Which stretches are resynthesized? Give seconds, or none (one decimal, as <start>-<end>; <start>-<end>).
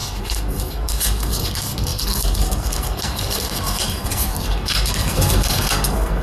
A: 0.0-6.2